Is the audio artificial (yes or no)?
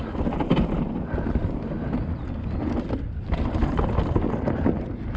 no